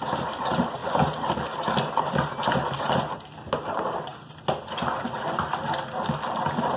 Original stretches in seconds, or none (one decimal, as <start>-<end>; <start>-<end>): 0.0-6.8